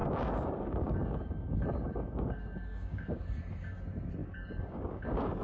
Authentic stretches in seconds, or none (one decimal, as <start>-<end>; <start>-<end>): 3.2-4.2